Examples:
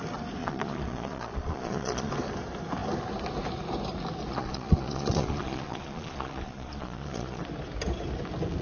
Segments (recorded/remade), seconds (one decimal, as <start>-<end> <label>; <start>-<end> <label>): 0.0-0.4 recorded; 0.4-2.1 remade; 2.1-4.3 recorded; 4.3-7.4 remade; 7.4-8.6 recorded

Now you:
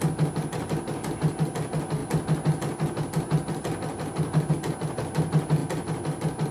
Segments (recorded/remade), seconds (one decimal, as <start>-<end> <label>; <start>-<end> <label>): 0.0-6.5 recorded

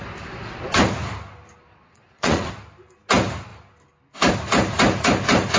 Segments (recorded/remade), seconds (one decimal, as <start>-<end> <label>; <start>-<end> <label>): 0.0-1.7 recorded; 1.7-2.5 remade; 2.5-5.6 recorded

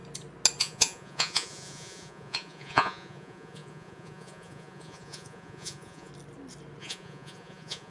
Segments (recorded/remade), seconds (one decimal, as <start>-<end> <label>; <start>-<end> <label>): 0.0-0.6 recorded; 0.6-6.1 remade; 6.1-6.8 recorded; 6.8-7.9 remade

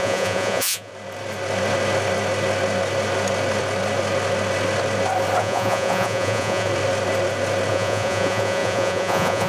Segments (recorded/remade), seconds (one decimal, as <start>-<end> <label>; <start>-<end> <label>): 0.0-0.9 remade; 0.9-5.4 recorded; 5.4-6.7 remade; 6.7-7.7 recorded; 7.7-9.5 remade

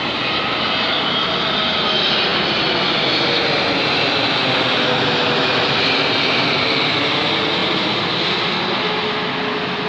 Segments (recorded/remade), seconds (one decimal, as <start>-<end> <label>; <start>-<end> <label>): 0.0-9.9 recorded